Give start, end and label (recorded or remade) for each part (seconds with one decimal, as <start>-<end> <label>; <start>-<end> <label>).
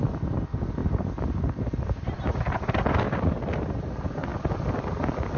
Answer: 0.0-0.8 recorded; 0.8-2.4 remade; 2.4-5.4 recorded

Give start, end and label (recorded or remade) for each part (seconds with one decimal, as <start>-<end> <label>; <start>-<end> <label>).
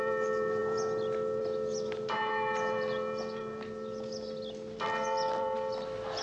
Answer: 0.0-6.2 recorded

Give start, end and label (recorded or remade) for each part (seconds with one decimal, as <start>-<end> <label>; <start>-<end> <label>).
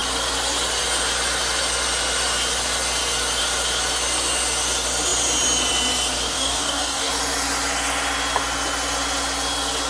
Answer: 0.0-6.3 recorded; 6.3-7.1 remade; 7.1-9.9 recorded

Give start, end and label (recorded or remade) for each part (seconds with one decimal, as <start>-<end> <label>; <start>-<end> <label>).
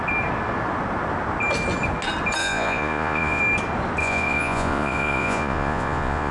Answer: 0.0-2.4 recorded; 2.4-3.4 remade; 3.4-4.0 recorded; 4.0-6.3 remade